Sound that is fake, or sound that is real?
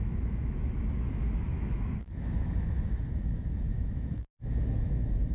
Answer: fake